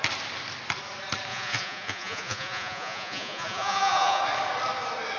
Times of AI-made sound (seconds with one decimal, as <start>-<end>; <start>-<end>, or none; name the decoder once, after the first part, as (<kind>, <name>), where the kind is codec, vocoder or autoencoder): 1.3-4.2 (vocoder, Vocos)